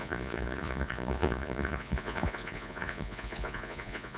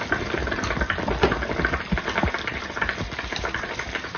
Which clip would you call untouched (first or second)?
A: second